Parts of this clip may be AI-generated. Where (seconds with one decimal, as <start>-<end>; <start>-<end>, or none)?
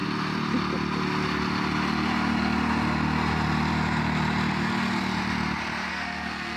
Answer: 5.9-6.6